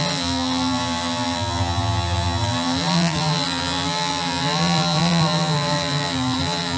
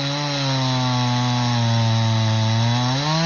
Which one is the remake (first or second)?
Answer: first